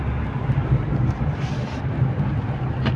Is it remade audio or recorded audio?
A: recorded